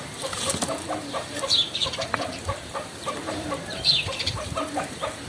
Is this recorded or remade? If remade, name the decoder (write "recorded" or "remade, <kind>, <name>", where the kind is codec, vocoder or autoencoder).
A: remade, vocoder, BigVGAN v2